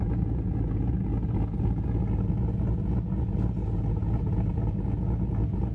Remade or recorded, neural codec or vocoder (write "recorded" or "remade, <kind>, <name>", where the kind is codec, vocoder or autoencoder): remade, vocoder, Vocos